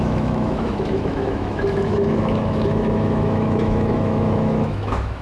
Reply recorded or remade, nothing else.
remade